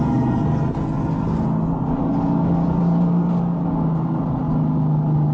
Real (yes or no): yes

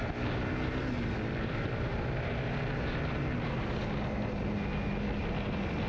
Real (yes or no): yes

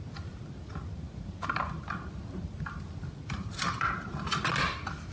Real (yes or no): yes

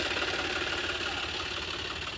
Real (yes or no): yes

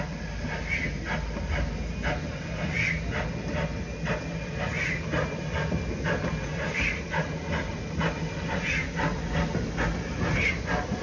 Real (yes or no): yes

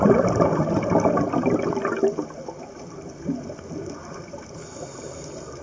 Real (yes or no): yes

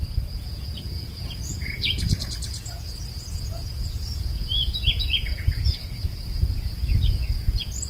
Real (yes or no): no